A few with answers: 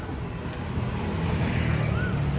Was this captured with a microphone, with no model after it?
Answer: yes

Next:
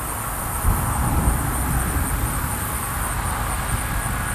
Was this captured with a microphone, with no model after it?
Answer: yes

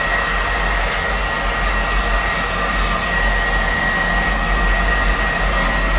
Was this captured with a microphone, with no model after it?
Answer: yes